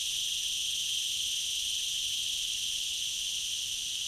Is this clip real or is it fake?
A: real